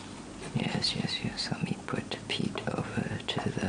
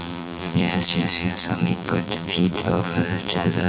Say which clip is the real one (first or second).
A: first